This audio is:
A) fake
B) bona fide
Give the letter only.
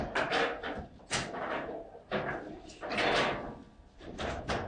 B